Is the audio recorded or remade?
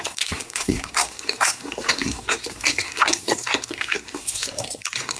remade